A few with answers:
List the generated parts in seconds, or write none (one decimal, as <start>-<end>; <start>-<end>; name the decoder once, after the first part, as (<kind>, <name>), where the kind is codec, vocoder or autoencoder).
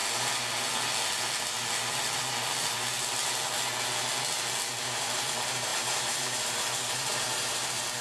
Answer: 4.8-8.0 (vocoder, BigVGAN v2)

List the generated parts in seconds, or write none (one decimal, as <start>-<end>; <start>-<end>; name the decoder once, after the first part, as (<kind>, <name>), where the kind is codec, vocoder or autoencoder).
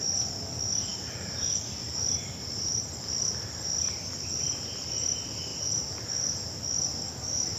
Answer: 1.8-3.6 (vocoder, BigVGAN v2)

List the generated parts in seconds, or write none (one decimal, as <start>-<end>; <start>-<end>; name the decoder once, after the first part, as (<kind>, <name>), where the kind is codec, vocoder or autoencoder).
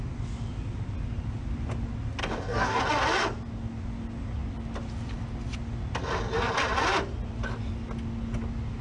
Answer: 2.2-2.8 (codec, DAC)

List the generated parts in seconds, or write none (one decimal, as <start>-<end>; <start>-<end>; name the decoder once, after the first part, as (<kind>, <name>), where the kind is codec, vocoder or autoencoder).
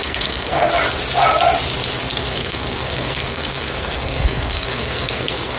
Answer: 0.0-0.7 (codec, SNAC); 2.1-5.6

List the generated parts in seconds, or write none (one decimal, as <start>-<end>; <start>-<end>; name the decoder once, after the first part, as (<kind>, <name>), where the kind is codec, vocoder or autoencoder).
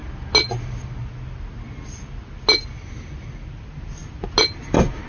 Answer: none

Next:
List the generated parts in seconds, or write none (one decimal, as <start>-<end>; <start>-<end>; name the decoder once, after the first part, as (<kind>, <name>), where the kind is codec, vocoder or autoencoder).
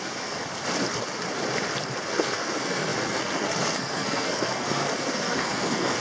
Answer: 0.0-0.4 (codec, SNAC); 2.1-6.0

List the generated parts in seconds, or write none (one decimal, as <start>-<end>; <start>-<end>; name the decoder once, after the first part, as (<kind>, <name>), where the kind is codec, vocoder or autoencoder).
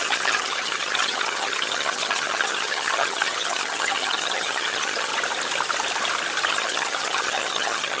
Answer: 0.0-5.1 (vocoder, HiFi-GAN); 6.5-8.0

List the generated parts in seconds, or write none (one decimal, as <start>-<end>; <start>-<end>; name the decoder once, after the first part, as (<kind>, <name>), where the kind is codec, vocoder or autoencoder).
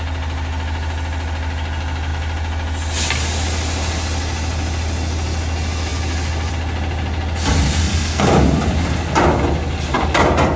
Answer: 7.8-8.3 (codec, SNAC)